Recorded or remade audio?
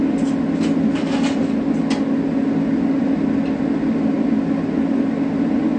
recorded